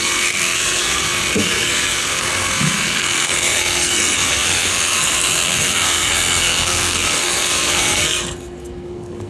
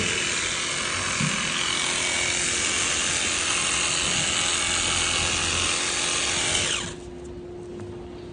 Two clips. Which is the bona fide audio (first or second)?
second